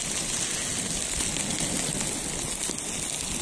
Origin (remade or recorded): recorded